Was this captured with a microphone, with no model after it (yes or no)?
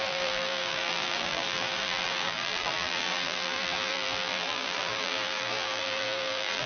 no